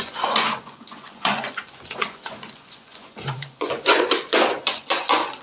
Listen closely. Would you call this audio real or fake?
fake